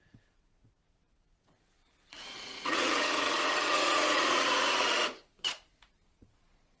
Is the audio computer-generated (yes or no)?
yes